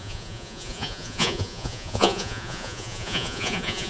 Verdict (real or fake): fake